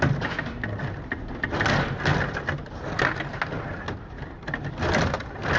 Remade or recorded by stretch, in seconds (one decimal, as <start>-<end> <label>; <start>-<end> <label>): 0.0-5.6 recorded